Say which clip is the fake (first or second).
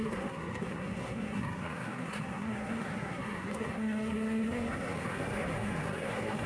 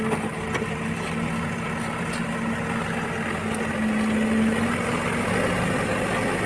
first